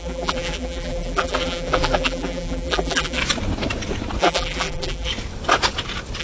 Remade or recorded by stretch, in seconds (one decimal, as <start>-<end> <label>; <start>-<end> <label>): 0.0-3.2 remade; 3.2-4.2 recorded; 4.2-5.1 remade; 5.1-6.2 recorded

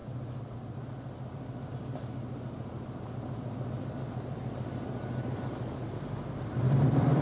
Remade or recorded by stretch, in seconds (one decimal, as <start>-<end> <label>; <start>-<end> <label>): 0.0-7.2 remade

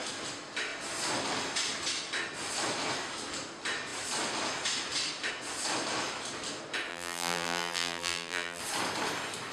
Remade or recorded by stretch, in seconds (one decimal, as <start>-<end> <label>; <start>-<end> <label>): 0.0-6.9 recorded; 6.9-8.6 remade; 8.6-9.5 recorded

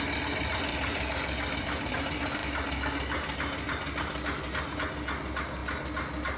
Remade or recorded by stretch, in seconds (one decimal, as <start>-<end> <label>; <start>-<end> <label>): 0.0-0.7 recorded; 0.7-1.9 remade; 1.9-6.4 recorded

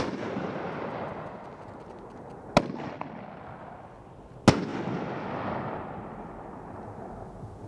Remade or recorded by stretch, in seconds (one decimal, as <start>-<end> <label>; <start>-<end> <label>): 0.0-7.7 recorded